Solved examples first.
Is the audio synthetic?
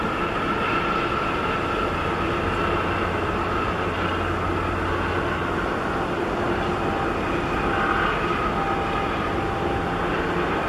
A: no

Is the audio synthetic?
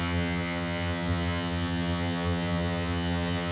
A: yes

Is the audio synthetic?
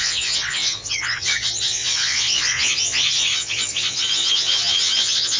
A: yes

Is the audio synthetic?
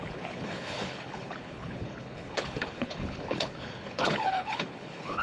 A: yes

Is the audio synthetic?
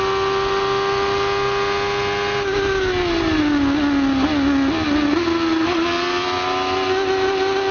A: no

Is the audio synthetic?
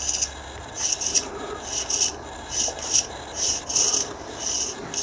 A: no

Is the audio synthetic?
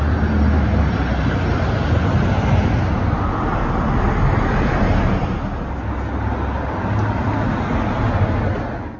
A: no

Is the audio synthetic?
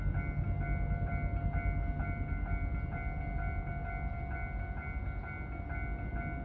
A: no